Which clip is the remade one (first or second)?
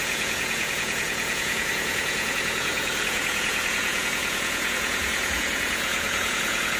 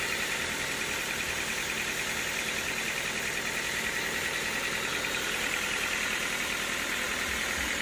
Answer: first